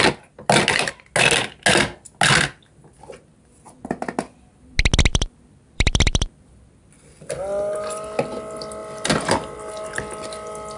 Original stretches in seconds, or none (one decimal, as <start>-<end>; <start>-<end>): 0.0-5.1; 6.5-8.8; 9.7-10.8